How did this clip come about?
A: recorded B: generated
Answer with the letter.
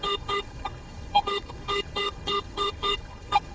B